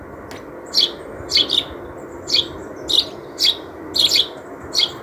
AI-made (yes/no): no